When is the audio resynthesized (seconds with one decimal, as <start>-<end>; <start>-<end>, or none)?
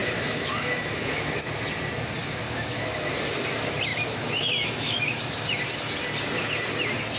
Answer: 0.0-1.7; 2.2-3.1; 3.9-5.6